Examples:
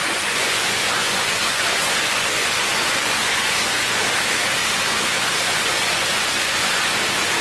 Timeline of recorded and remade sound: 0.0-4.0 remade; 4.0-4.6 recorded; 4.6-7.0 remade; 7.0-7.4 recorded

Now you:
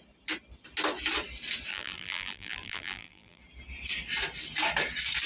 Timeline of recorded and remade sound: 0.0-1.7 recorded; 1.7-3.4 remade; 3.4-5.3 recorded

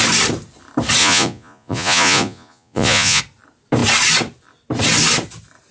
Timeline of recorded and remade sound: 0.0-1.0 recorded; 1.0-3.2 remade; 3.2-5.7 recorded

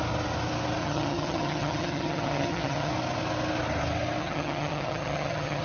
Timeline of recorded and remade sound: 0.0-0.8 recorded; 0.8-2.9 remade; 2.9-4.2 recorded; 4.2-5.6 remade

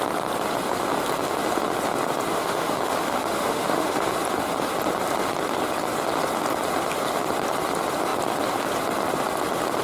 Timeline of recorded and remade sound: 0.0-2.3 recorded; 2.3-4.1 remade; 4.1-9.8 recorded

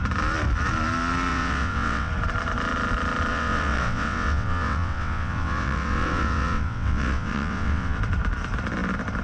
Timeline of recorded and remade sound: 0.0-1.3 recorded; 1.3-2.1 remade; 2.1-3.3 recorded; 3.3-8.0 remade; 8.0-9.2 recorded

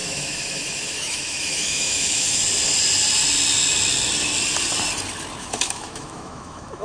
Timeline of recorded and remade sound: 0.0-2.4 remade; 2.4-5.4 recorded; 5.4-6.8 remade

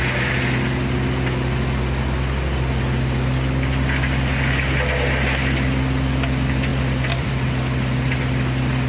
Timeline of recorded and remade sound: 0.0-6.7 recorded; 6.7-7.3 remade; 7.3-8.9 recorded